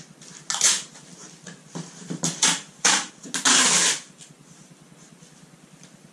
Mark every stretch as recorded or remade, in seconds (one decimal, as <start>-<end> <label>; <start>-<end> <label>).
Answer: 0.0-1.6 recorded; 1.6-3.1 remade; 3.1-6.1 recorded